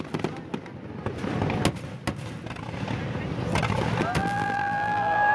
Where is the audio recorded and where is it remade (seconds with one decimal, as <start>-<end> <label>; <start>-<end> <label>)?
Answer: 0.0-4.2 recorded; 4.2-5.3 remade